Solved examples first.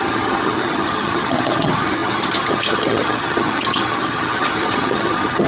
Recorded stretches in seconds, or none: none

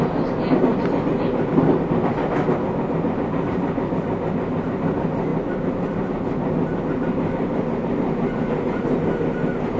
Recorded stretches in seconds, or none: 0.0-9.8

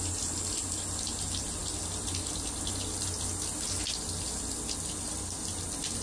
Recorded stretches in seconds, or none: 0.0-6.0

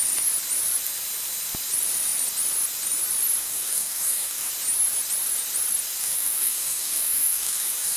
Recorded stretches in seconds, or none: 0.0-3.4; 4.5-6.0

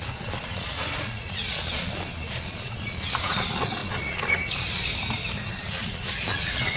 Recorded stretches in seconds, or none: 4.9-5.5